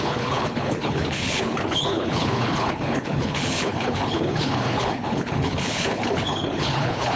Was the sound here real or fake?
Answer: fake